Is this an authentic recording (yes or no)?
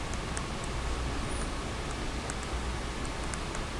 yes